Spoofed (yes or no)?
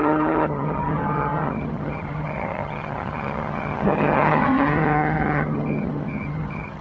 yes